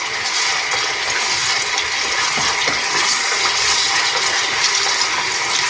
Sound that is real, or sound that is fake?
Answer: real